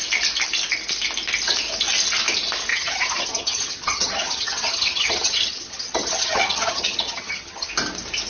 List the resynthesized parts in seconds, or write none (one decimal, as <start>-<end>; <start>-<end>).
2.7-7.7